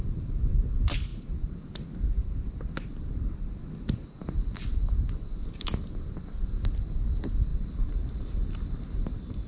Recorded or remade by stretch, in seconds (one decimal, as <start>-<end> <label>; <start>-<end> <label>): 0.0-7.5 recorded; 7.5-9.5 remade

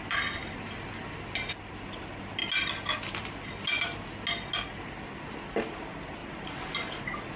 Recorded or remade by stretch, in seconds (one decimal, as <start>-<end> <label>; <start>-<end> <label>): 0.0-0.4 remade; 0.4-1.7 recorded; 1.7-2.4 remade; 2.4-5.4 recorded; 5.4-6.2 remade; 6.2-7.0 recorded; 7.0-7.4 remade